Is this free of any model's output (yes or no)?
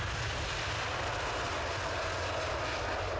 yes